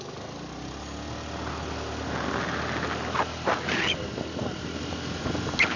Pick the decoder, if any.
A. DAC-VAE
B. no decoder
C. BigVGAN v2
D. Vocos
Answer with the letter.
B